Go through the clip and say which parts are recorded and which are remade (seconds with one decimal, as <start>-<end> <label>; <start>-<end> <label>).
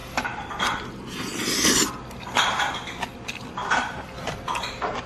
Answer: 0.0-3.6 recorded; 3.6-4.5 remade; 4.5-5.1 recorded